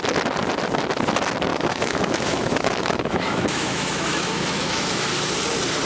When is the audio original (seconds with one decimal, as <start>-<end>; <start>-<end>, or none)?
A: 0.0-1.5; 5.0-5.9